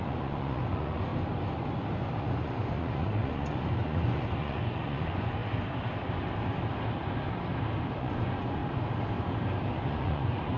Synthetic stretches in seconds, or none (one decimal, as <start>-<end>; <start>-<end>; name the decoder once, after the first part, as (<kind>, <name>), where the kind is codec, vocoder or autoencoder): 0.0-1.1 (vocoder, Vocos); 2.2-5.4; 8.0-8.6; 9.7-10.6